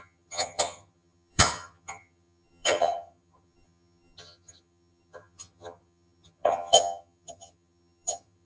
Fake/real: fake